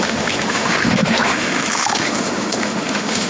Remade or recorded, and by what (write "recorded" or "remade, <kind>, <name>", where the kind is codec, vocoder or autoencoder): remade, autoencoder, DAC-VAE